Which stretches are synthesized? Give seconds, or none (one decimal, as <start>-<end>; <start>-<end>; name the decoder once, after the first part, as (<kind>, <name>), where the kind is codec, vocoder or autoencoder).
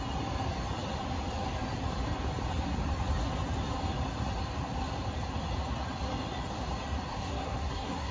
7.1-8.1 (codec, SNAC)